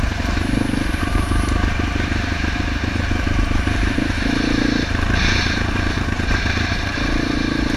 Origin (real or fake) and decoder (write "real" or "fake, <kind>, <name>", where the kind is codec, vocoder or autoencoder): fake, vocoder, BigVGAN v2